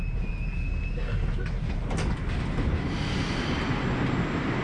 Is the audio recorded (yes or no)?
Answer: yes